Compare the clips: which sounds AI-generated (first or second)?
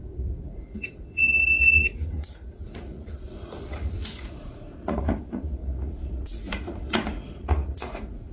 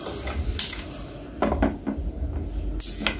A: first